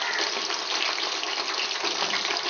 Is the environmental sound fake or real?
real